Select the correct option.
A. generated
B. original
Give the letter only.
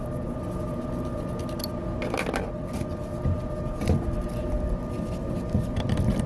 B